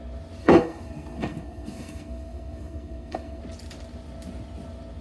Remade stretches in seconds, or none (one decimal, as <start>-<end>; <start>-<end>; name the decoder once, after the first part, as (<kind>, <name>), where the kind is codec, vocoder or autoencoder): 0.4-3.4 (codec, SNAC)